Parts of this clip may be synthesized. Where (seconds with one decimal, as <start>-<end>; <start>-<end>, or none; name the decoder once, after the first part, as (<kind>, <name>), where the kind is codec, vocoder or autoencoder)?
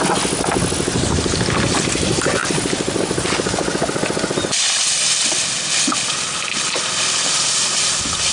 none